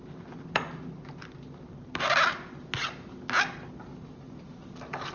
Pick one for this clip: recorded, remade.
recorded